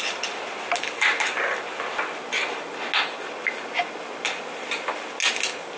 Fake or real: real